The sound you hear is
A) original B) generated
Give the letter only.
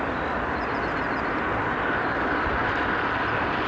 A